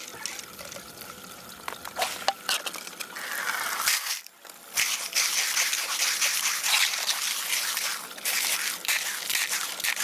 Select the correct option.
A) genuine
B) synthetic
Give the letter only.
A